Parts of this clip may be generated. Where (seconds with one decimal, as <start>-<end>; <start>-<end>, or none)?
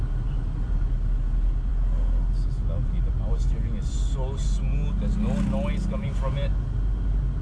none